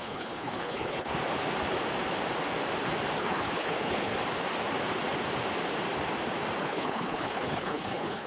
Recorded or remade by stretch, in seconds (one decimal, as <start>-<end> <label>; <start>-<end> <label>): 0.0-1.1 remade; 1.1-3.2 recorded; 3.2-4.1 remade; 4.1-6.6 recorded; 6.6-8.3 remade